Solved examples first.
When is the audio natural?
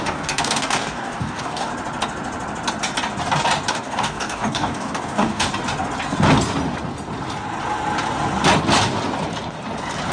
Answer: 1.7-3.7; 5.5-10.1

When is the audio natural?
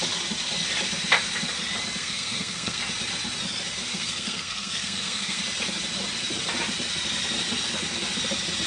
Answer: 0.0-2.0; 2.8-3.9; 5.4-8.7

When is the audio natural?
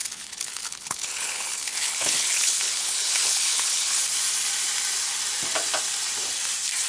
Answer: 4.0-6.9